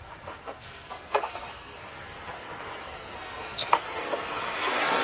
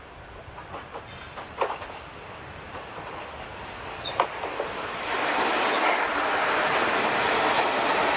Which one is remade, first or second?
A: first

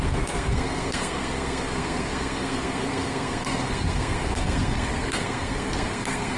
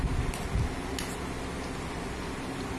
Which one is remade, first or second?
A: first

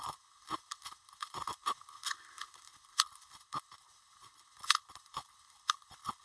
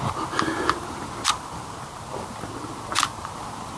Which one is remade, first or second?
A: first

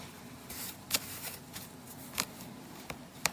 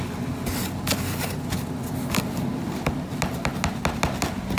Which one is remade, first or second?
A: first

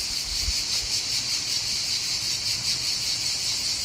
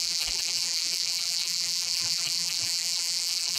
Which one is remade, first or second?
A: second